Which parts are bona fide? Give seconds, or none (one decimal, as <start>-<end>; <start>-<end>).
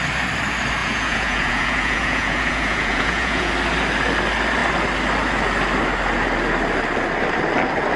0.0-0.8; 3.5-8.0